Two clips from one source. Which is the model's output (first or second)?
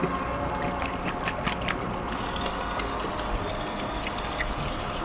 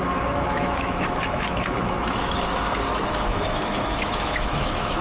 second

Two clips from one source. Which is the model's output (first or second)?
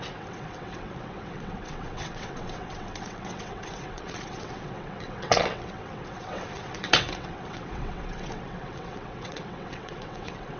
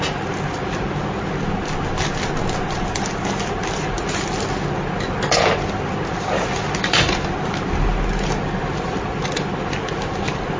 first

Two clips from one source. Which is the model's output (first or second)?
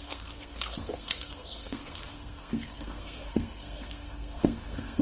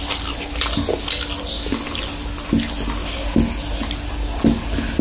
first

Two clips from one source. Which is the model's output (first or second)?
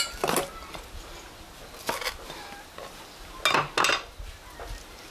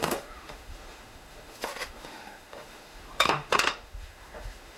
second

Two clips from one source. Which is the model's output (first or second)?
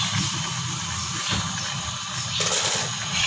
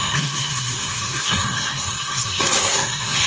second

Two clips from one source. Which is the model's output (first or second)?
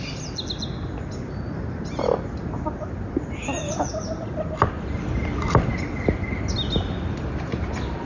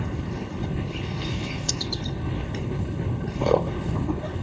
second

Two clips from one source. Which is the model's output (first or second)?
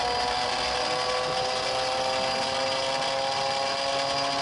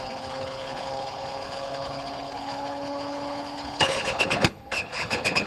second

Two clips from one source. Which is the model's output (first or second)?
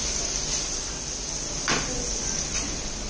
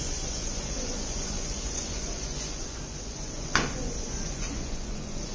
second